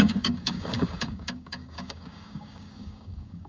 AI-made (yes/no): yes